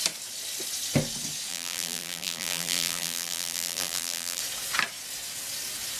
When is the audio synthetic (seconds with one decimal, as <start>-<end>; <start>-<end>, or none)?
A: 1.5-4.4